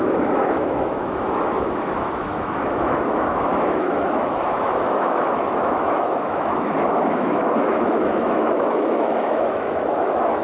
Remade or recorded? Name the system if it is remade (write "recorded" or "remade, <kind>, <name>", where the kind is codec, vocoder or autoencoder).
remade, autoencoder, DAC-VAE